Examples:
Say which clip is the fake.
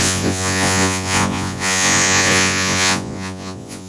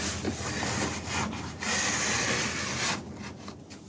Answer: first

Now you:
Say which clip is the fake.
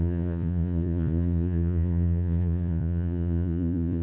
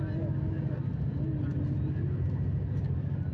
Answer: first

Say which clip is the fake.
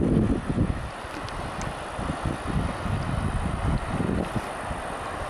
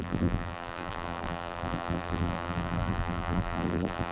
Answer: second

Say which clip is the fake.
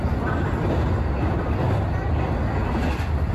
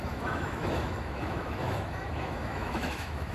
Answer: second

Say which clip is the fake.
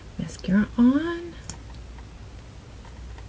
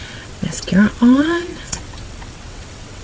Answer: second